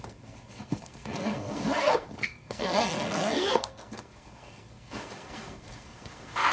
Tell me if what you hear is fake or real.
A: fake